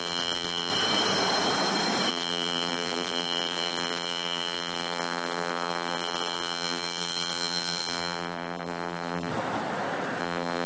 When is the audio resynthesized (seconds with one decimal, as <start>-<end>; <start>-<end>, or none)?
0.0-0.7; 2.1-9.3; 10.2-10.7

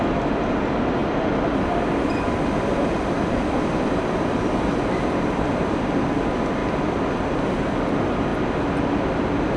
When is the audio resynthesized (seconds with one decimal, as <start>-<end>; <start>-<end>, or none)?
1.0-5.8

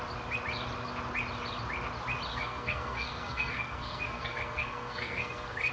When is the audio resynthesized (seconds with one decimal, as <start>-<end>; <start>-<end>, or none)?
2.3-5.7

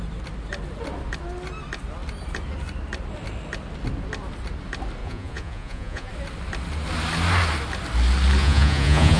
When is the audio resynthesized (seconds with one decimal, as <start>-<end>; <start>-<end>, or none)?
5.0-6.1; 8.4-9.2

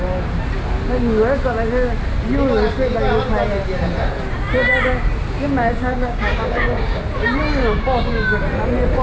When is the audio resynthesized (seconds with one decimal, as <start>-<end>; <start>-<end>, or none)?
5.6-7.0; 7.6-8.4

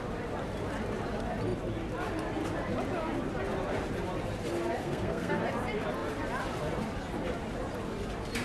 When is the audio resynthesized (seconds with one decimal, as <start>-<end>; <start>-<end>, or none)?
4.8-5.4